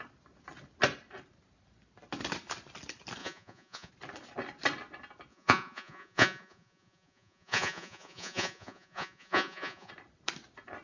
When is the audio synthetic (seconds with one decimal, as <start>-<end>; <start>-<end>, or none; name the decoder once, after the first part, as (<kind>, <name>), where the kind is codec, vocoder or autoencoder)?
3.2-3.9 (vocoder, Vocos); 5.3-9.9

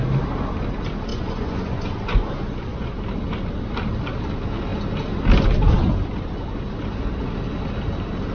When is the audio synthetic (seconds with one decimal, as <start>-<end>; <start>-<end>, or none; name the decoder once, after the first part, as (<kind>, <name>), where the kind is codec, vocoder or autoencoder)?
1.1-3.0 (vocoder, Vocos)

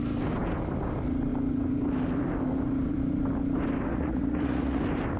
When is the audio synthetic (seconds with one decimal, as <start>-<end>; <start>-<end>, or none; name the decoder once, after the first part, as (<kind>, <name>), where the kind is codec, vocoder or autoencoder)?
3.9-4.8 (vocoder, Vocos)

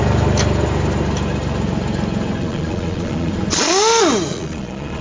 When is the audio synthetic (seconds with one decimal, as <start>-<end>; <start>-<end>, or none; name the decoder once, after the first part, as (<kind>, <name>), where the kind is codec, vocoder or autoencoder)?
2.4-3.3 (vocoder, Vocos); 4.3-5.0

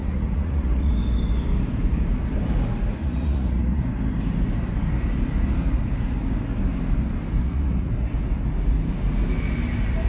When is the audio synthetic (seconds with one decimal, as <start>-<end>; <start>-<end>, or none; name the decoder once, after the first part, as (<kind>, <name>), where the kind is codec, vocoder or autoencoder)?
0.0-0.9 (vocoder, Vocos); 3.0-3.8; 7.4-7.9

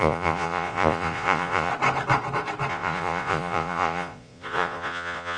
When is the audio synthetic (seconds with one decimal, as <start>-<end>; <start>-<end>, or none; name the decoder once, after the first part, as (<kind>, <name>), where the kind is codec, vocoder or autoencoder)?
0.0-1.7 (vocoder, Vocos); 2.7-5.4

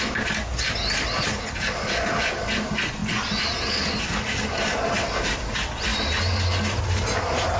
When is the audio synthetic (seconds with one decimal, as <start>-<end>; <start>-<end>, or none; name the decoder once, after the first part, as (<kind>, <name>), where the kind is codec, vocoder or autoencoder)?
none